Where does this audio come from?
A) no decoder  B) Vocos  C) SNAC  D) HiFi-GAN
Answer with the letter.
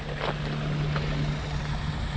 A